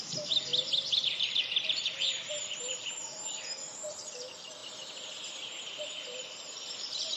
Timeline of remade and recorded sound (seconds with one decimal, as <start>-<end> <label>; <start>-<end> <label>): 0.0-0.5 remade; 0.5-1.0 recorded; 1.0-4.6 remade; 4.6-5.8 recorded; 5.8-7.2 remade

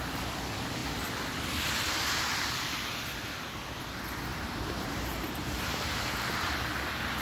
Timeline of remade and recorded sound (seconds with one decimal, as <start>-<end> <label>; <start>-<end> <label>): 0.0-4.3 recorded; 4.3-6.6 remade; 6.6-7.2 recorded

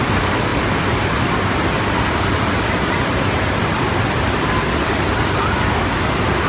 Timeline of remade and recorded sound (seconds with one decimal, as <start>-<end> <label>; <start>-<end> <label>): 0.0-6.5 recorded

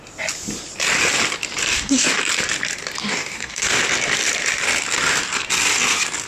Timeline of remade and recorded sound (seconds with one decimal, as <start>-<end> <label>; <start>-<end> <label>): 0.0-1.7 recorded; 1.7-2.2 remade; 2.2-3.0 recorded; 3.0-3.8 remade; 3.8-6.3 recorded

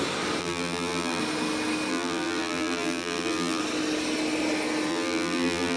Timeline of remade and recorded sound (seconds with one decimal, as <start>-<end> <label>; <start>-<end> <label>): 0.0-0.4 recorded; 0.4-1.2 remade; 1.2-1.9 recorded; 1.9-3.6 remade; 3.6-4.9 recorded; 4.9-5.8 remade

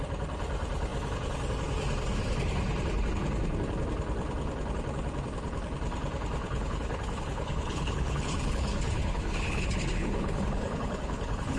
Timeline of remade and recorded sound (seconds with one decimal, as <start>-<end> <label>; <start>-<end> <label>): 0.0-6.4 recorded; 6.4-11.6 remade

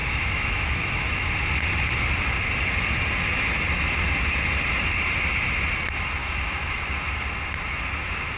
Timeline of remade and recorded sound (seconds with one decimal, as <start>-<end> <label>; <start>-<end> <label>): 0.0-1.3 remade; 1.3-6.2 recorded; 6.2-6.8 remade; 6.8-8.4 recorded

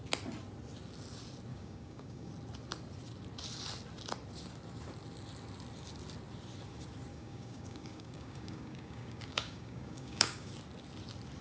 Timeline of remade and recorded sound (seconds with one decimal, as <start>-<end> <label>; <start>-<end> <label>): 0.0-1.5 recorded; 1.5-2.3 remade; 2.3-7.1 recorded; 7.1-10.5 remade; 10.5-11.4 recorded